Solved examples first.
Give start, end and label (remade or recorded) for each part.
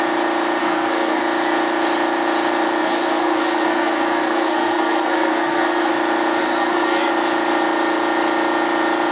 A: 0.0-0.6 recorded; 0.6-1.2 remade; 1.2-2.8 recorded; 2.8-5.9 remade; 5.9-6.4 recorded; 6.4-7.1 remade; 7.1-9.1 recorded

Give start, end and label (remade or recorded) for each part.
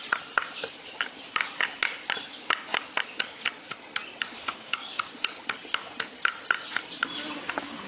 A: 0.0-4.3 recorded; 4.3-5.1 remade; 5.1-7.9 recorded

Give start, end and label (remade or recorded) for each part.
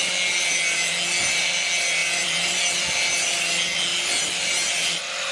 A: 0.0-2.0 recorded; 2.0-2.6 remade; 2.6-5.3 recorded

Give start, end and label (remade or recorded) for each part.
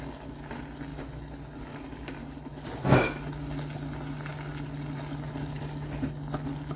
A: 0.0-6.8 recorded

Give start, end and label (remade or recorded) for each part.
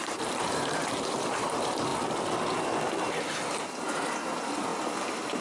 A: 0.0-1.9 remade; 1.9-3.6 recorded; 3.6-4.7 remade; 4.7-5.4 recorded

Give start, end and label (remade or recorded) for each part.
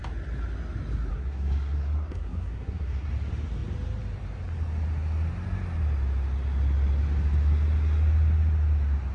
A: 0.0-1.1 recorded; 1.1-3.1 remade; 3.1-9.1 recorded